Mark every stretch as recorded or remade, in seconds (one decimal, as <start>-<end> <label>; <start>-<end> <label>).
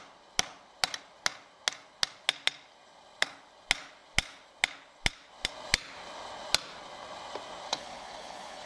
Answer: 0.0-7.7 recorded; 7.7-8.7 remade